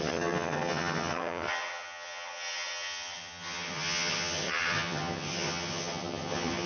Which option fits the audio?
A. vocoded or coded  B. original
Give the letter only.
A